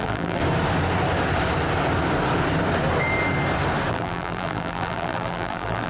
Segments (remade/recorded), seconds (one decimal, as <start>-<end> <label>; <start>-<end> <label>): 0.0-0.4 remade; 0.4-3.9 recorded; 3.9-5.9 remade